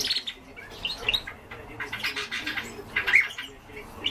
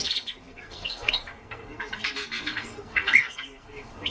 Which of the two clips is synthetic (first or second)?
second